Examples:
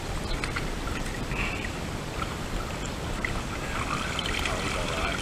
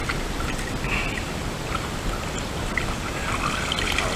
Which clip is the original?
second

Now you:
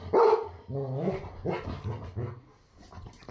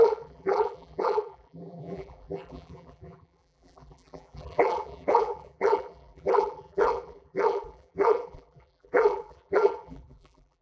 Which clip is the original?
first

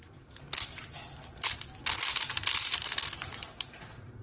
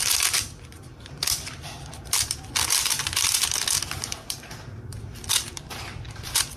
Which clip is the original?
first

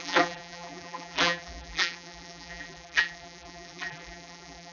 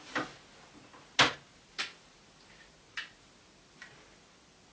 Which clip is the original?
second